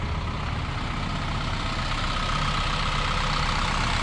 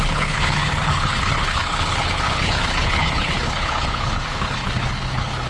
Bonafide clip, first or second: first